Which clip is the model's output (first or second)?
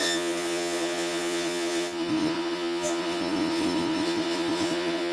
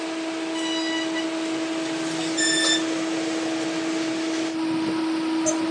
first